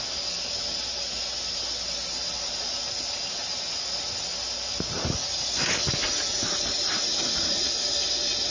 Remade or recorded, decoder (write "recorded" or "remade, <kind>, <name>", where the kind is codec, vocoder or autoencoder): recorded